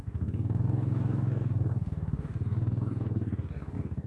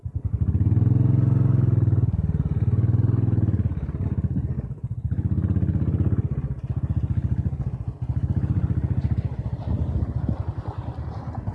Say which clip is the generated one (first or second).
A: first